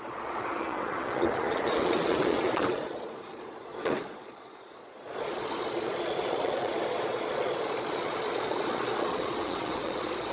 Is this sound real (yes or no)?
no